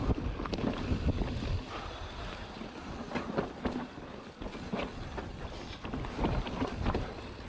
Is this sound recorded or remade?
recorded